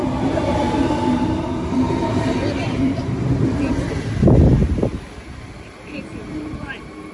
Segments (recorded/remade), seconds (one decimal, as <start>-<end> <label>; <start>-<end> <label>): 0.0-3.9 remade; 3.9-4.6 recorded; 4.6-6.3 remade; 6.3-7.1 recorded